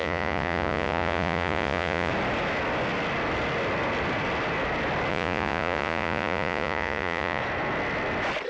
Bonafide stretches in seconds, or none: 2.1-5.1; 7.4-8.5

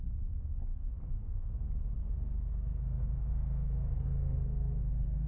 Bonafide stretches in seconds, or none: 0.0-0.7; 1.6-2.0

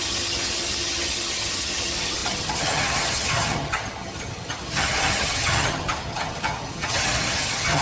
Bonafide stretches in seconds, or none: none

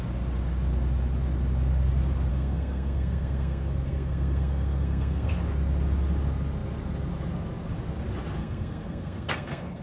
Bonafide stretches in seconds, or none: 0.0-2.3; 5.3-8.4

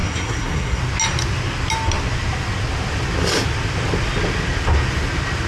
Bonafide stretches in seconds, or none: 0.8-5.5